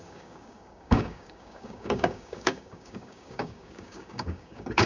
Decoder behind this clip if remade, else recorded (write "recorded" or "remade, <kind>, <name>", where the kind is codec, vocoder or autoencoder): remade, codec, DAC